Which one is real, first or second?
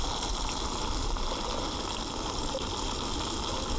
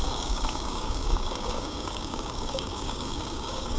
first